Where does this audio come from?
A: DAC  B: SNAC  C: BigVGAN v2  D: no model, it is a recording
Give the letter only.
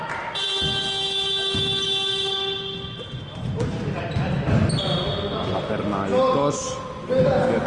D